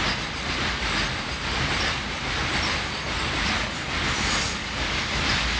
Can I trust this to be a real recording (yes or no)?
yes